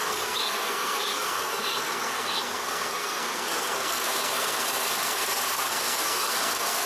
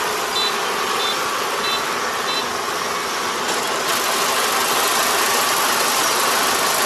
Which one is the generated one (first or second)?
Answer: first